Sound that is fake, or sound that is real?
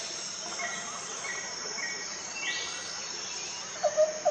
real